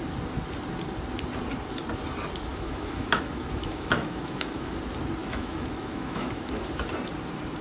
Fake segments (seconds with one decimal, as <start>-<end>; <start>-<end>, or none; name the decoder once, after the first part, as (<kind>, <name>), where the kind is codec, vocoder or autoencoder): 2.5-4.7 (autoencoder, DAC-VAE); 5.2-6.7